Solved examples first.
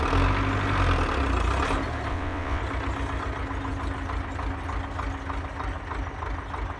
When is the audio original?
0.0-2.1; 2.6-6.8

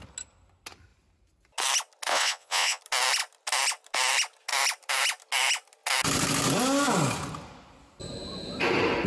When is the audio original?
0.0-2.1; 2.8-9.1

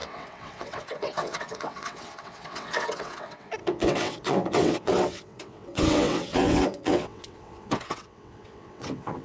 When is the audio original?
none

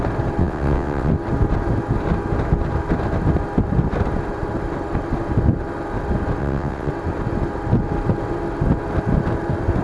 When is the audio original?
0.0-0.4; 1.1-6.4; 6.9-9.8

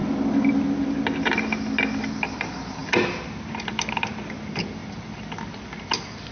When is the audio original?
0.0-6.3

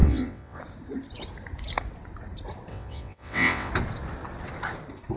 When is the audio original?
0.6-2.7; 3.7-5.2

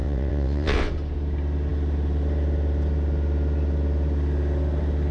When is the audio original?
0.9-5.1